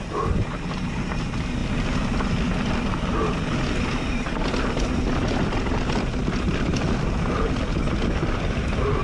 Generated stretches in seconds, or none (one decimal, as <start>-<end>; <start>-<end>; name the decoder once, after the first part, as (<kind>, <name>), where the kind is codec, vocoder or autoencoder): none